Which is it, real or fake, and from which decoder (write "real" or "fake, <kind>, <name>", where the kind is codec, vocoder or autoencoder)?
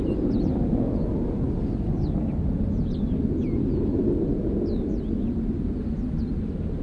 real